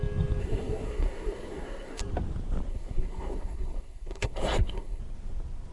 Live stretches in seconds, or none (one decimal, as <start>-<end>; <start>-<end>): 0.0-0.4; 2.0-2.7; 5.0-5.7